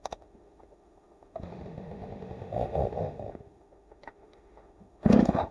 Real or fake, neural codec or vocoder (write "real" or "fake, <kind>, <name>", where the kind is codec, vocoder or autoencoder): fake, autoencoder, DAC-VAE